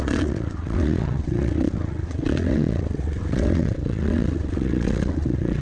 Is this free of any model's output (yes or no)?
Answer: no